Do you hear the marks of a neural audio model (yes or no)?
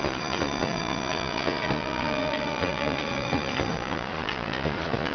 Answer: yes